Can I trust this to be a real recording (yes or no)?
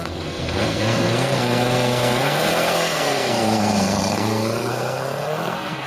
no